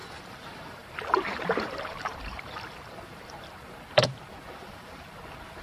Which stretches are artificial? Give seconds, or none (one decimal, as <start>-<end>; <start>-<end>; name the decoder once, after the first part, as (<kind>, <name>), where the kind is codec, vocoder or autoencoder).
0.0-5.6 (vocoder, BigVGAN v2)